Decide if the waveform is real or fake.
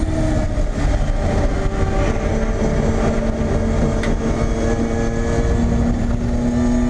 real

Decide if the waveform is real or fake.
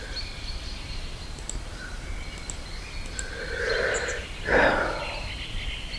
real